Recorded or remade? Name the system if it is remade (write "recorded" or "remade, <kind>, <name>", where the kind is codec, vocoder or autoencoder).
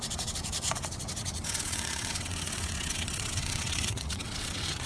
remade, vocoder, WaveNeXt